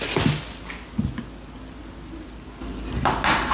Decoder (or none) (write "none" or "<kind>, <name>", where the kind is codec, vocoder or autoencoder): none